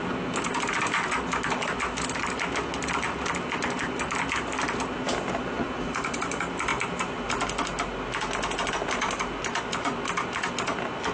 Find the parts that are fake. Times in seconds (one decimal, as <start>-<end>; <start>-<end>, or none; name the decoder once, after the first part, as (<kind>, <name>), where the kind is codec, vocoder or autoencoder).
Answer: none